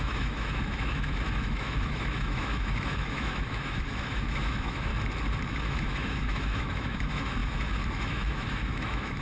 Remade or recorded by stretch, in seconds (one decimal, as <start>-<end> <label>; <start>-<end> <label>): 0.0-4.9 remade; 4.9-5.5 recorded; 5.5-9.2 remade